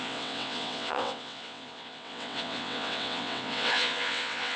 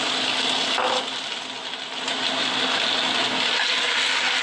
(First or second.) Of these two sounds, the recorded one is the second